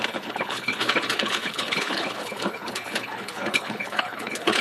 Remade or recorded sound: remade